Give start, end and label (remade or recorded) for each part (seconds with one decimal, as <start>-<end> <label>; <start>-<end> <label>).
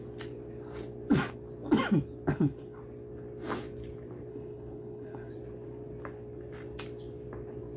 0.0-2.3 recorded; 2.3-2.8 remade; 2.8-4.3 recorded; 4.3-5.3 remade; 5.3-7.8 recorded